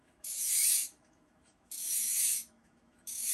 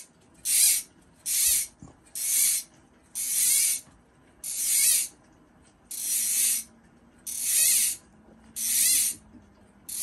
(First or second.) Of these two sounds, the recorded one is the second